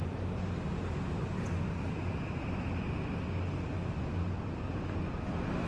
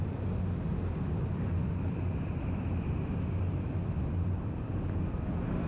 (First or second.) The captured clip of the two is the first